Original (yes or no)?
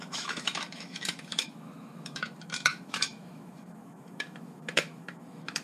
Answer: no